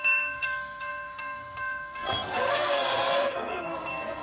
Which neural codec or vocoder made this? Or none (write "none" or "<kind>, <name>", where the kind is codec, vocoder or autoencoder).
codec, SNAC